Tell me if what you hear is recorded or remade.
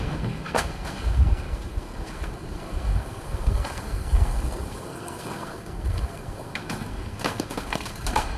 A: remade